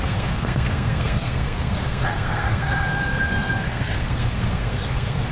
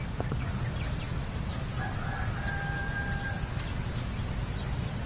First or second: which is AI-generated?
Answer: first